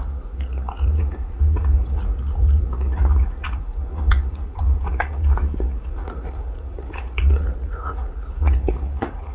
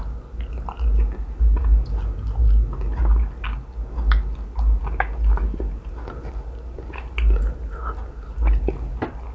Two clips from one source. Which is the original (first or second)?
second